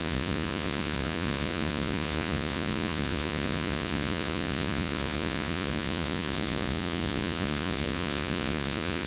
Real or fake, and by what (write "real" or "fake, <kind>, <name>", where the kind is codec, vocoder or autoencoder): fake, vocoder, Vocos